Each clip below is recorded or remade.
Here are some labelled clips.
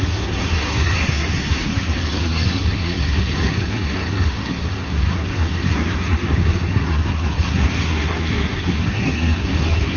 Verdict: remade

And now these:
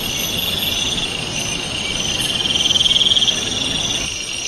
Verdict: recorded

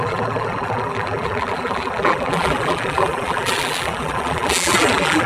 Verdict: remade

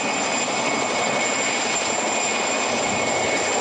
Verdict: recorded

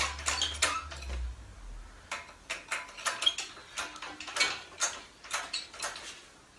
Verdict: recorded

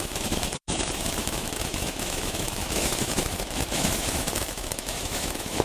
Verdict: remade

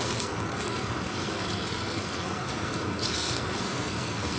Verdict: remade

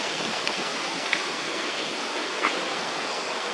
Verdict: remade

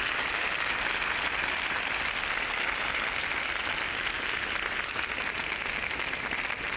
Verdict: recorded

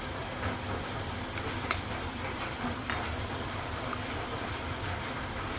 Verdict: remade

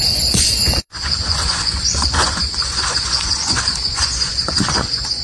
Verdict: remade